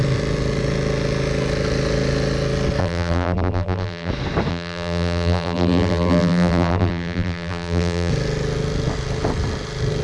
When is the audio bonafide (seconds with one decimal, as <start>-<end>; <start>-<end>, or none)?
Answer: 0.0-2.8; 4.1-4.5; 8.1-10.0